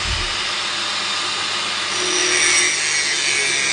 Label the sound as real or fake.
real